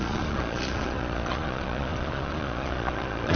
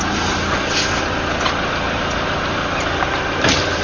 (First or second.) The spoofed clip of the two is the first